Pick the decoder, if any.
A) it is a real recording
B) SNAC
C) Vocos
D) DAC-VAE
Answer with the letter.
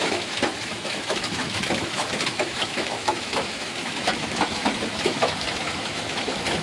D